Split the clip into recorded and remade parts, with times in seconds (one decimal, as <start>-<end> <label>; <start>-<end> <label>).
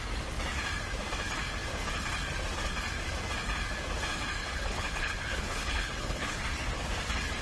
0.0-4.4 recorded; 4.4-6.4 remade; 6.4-7.4 recorded